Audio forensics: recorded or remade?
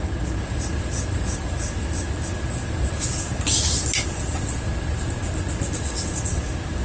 recorded